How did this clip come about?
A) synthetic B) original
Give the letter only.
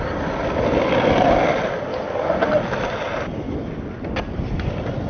B